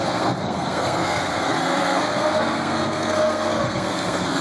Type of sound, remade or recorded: remade